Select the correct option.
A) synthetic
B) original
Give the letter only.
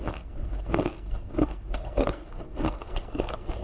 A